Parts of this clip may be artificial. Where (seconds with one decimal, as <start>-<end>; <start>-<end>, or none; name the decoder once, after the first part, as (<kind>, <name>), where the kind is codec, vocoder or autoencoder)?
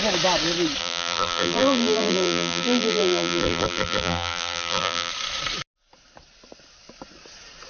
0.8-5.1 (vocoder, BigVGAN v2)